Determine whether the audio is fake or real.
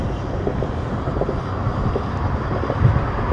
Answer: real